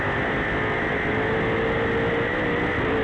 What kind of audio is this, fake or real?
real